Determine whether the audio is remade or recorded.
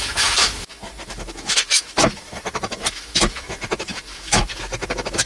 remade